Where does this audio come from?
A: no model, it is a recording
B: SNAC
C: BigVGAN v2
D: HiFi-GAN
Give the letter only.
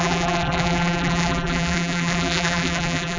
C